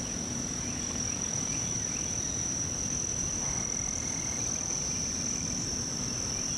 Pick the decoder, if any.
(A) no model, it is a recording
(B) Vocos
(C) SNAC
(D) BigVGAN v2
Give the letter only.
D